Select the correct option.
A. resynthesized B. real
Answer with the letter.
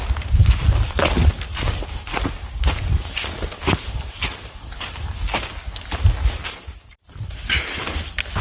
B